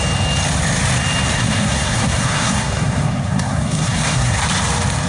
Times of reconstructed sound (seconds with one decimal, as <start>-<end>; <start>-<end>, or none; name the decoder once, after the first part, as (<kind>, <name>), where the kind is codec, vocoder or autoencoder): 1.3-4.4 (codec, SNAC)